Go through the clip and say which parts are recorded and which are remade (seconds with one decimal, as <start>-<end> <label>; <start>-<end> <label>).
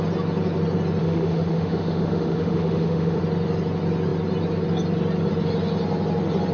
0.0-1.0 recorded; 1.0-3.2 remade; 3.2-6.5 recorded